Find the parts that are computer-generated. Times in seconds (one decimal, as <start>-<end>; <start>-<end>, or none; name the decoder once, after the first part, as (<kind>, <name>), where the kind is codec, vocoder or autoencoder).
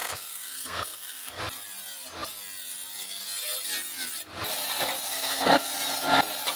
0.0-1.4 (codec, SNAC); 5.1-5.7